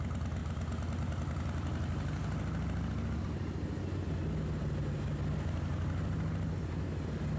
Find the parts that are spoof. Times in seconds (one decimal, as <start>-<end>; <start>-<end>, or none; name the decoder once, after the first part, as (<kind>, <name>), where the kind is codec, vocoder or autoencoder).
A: none